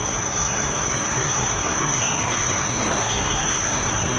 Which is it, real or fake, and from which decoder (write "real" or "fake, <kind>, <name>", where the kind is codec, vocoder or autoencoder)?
fake, codec, SNAC